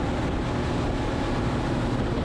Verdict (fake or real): real